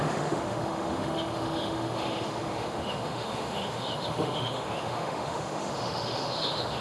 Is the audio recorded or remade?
remade